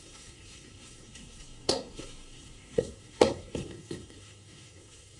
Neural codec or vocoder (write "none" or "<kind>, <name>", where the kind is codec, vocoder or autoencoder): codec, SNAC